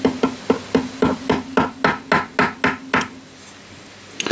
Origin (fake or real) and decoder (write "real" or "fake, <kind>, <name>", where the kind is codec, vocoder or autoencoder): real